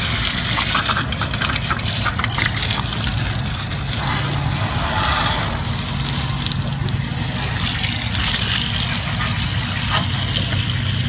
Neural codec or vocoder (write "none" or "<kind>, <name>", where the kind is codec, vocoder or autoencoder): none